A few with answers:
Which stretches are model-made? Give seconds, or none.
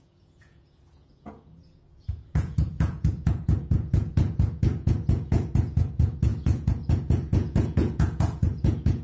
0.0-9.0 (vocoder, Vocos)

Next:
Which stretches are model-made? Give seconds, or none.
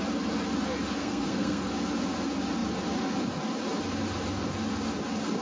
1.0-1.7 (codec, SNAC)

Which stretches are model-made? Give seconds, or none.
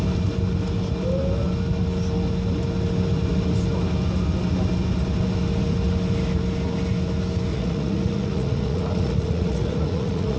7.5-10.4 (vocoder, Vocos)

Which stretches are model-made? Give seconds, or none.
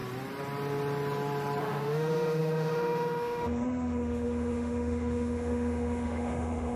1.6-6.8 (autoencoder, DAC-VAE)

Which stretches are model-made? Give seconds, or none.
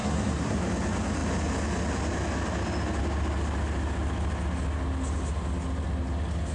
0.0-0.6 (codec, SNAC)